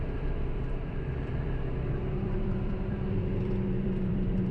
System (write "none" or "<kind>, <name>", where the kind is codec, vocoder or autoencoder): vocoder, BigVGAN v2